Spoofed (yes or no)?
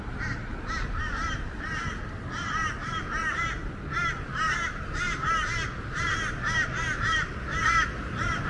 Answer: no